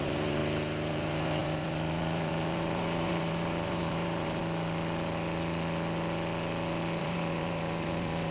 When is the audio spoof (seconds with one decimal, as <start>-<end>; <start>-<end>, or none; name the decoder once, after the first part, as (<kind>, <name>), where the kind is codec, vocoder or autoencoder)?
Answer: 0.0-0.4 (vocoder, BigVGAN v2); 0.9-4.4; 7.0-8.3